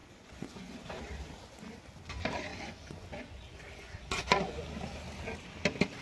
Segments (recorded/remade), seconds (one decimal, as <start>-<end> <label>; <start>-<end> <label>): 0.0-1.0 remade; 1.0-2.5 recorded; 2.5-4.7 remade; 4.7-6.0 recorded